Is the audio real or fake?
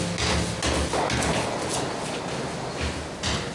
real